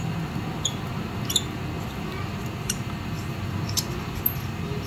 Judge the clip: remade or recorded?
recorded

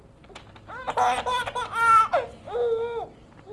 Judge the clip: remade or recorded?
recorded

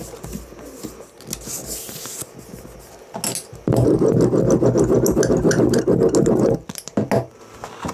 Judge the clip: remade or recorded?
recorded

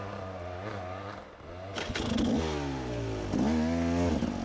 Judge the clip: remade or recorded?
recorded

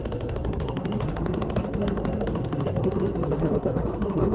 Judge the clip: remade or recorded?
remade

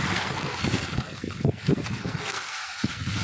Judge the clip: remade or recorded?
remade